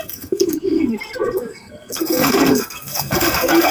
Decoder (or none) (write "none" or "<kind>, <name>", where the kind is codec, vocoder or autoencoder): codec, SNAC